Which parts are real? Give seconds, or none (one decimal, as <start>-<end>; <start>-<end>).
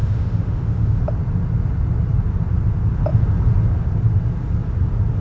1.0-5.2